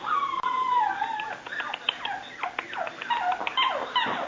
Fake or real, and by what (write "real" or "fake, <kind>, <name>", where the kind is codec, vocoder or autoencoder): real